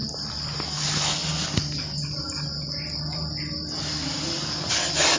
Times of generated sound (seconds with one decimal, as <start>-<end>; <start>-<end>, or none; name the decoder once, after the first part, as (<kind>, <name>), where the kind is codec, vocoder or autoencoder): 0.0-0.7 (vocoder, BigVGAN v2)